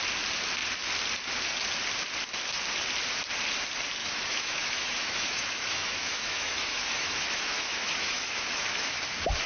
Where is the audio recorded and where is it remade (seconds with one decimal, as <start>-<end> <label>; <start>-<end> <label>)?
0.0-4.0 recorded; 4.0-9.0 remade; 9.0-9.5 recorded